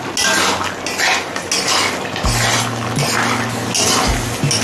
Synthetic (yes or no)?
no